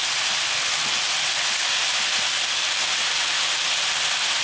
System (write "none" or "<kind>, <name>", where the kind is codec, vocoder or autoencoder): none